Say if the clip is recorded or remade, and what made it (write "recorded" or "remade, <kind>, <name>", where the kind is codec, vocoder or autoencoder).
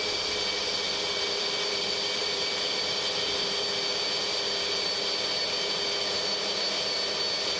recorded